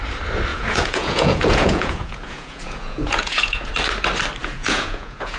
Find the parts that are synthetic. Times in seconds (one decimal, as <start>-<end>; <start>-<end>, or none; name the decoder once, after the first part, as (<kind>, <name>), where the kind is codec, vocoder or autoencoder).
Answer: 0.5-3.7 (vocoder, Vocos); 4.4-5.4